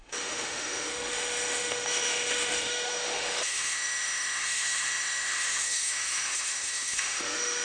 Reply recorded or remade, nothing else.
remade